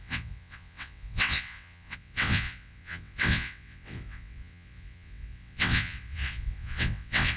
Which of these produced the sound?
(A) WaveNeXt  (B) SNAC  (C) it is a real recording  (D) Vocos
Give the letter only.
A